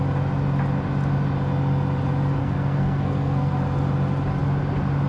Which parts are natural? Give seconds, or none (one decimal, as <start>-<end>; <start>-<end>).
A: 0.0-2.4; 3.5-5.1